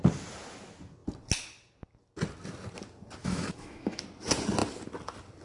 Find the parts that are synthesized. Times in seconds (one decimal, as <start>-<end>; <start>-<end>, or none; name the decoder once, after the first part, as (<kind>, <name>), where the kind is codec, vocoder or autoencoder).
3.2-4.0 (autoencoder, DAC-VAE)

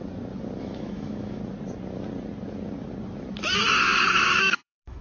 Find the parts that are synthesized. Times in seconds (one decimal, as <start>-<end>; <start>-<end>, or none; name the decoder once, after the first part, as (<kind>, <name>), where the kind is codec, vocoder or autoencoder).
0.6-1.4 (autoencoder, DAC-VAE); 4.4-5.0

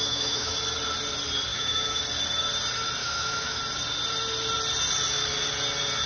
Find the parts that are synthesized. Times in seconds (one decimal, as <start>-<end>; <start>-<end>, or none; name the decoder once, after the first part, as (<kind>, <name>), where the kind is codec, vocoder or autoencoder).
0.0-0.5 (autoencoder, DAC-VAE); 1.5-2.0; 3.0-3.6

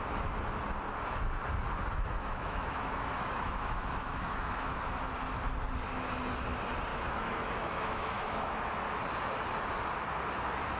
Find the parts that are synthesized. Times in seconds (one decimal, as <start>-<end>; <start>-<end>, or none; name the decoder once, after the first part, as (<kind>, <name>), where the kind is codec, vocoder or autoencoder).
2.2-5.0 (autoencoder, DAC-VAE); 6.9-8.5

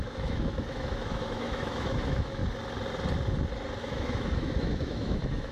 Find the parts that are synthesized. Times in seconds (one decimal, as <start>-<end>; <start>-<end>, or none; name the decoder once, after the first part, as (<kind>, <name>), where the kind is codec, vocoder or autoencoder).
0.0-2.4 (autoencoder, DAC-VAE); 3.8-5.5